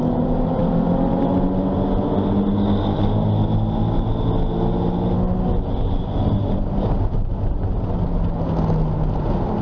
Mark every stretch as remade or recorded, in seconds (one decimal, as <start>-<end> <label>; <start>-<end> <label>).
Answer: 0.0-9.6 recorded